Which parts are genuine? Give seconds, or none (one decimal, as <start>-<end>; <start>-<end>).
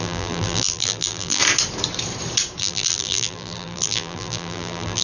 1.4-2.6